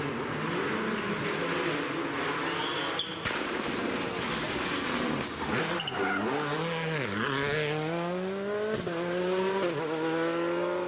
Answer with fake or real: real